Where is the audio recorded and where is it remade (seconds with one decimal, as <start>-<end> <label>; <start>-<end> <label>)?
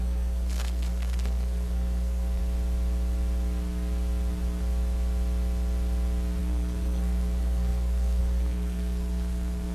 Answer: 0.0-2.4 remade; 2.4-6.4 recorded; 6.4-9.7 remade